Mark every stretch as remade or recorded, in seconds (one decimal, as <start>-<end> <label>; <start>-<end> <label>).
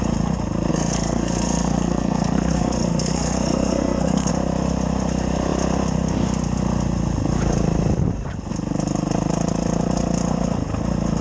0.0-0.7 recorded; 0.7-4.3 remade; 4.3-11.2 recorded